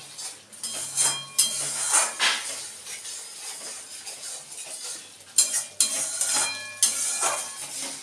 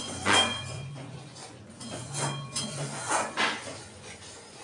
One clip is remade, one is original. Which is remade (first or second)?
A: second